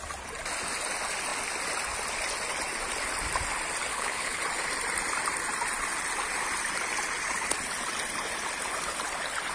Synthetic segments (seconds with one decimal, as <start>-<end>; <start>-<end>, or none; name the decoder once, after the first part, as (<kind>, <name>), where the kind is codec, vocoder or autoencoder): 3.9-4.4 (codec, HILCodec)